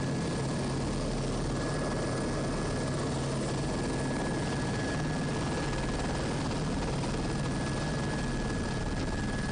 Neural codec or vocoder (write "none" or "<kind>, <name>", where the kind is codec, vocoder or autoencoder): none